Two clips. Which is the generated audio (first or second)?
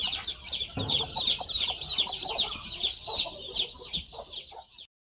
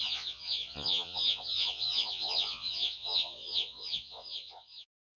second